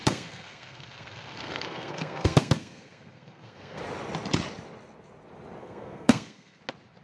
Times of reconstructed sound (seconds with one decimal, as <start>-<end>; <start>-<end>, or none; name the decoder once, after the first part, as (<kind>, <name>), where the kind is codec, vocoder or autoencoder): 0.0-3.8 (codec, SNAC); 5.6-6.6

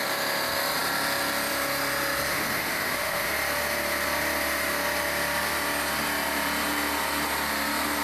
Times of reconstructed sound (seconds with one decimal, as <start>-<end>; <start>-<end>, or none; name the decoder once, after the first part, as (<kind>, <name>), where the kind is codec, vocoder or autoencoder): 2.3-3.3 (autoencoder, DAC-VAE)

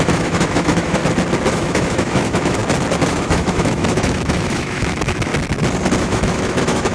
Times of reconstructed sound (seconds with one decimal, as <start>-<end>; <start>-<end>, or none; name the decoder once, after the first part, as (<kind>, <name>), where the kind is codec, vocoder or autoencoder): 0.0-1.0 (autoencoder, DAC-VAE); 1.5-2.6; 3.1-5.3; 6.0-6.9

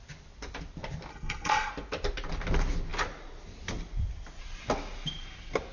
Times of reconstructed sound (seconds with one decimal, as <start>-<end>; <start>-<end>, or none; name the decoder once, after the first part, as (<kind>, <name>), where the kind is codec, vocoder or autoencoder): 1.1-1.7 (codec, SNAC)